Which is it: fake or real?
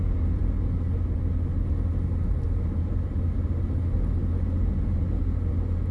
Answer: real